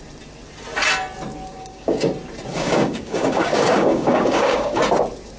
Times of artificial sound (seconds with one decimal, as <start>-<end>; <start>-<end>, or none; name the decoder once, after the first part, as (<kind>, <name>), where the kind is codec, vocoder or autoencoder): 1.5-2.1 (codec, DAC); 2.5-4.8